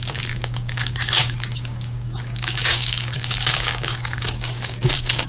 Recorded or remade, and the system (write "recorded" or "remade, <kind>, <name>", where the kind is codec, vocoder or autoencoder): remade, codec, DAC